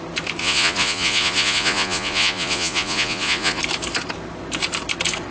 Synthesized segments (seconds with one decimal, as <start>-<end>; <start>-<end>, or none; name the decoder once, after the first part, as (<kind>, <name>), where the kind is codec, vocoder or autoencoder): 0.4-3.6 (vocoder, Vocos)